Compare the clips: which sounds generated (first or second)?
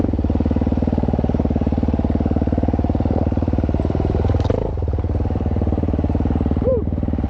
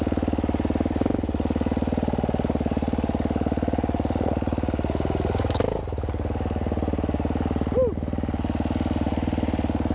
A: first